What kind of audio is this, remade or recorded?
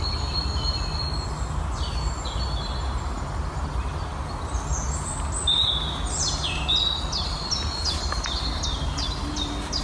recorded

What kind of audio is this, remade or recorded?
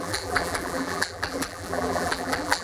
remade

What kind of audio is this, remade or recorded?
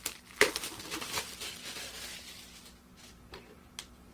remade